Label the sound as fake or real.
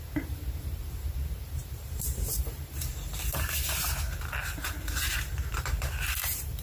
fake